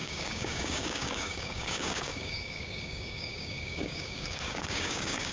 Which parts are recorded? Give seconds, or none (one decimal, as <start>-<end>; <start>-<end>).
none

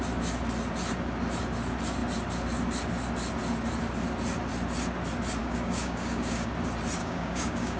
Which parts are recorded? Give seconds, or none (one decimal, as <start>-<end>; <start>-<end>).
0.0-5.4; 6.5-7.0

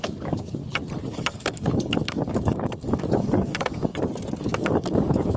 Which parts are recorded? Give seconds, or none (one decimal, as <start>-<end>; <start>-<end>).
0.6-1.1; 3.9-4.4

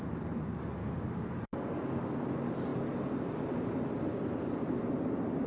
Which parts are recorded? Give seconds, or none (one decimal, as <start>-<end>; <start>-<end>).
0.0-0.8; 2.2-5.5

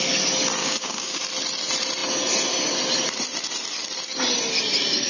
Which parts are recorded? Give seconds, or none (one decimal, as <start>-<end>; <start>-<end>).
0.0-0.6; 1.2-5.1

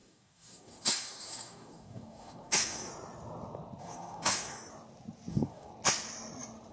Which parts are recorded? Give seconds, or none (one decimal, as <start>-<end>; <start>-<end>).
2.9-3.8; 4.7-5.3; 5.7-6.7

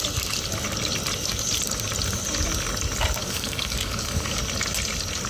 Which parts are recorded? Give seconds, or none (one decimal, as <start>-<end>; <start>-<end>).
0.0-3.2; 4.4-5.3